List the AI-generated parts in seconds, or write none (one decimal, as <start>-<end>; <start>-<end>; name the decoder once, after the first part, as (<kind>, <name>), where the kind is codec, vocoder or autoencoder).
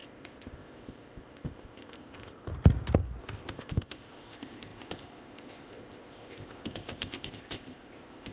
0.0-2.5 (codec, ZipCodec); 3.2-8.3